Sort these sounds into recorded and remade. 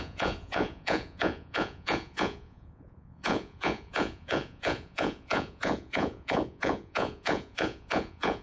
remade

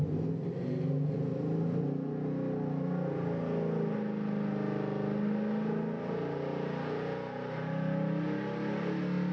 recorded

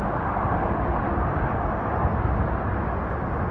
recorded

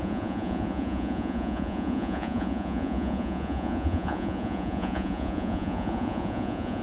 remade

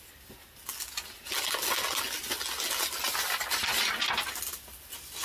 recorded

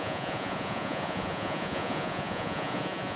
remade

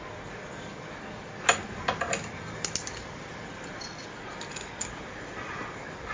recorded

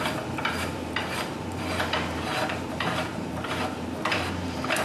remade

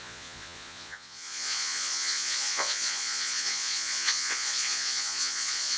remade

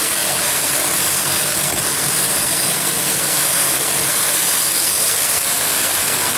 remade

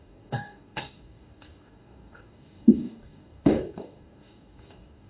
remade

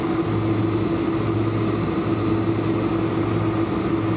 recorded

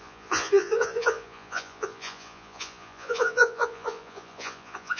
remade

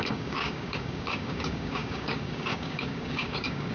remade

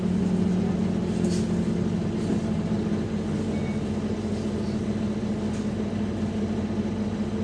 recorded